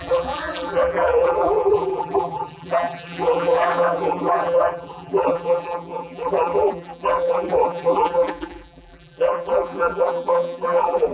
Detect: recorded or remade remade